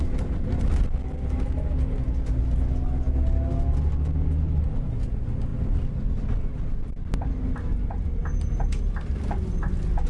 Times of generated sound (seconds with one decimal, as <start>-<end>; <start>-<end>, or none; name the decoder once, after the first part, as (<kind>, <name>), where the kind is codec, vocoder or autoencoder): none